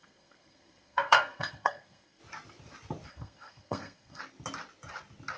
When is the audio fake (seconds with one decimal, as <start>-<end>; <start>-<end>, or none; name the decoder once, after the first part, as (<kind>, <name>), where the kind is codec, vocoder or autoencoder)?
0.0-2.2 (codec, SNAC); 3.1-4.2